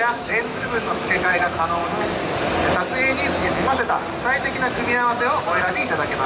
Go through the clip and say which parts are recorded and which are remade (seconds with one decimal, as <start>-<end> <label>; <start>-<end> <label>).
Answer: 0.0-1.8 remade; 1.8-5.6 recorded; 5.6-6.3 remade